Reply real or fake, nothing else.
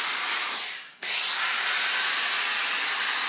real